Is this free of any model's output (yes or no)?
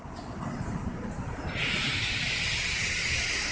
yes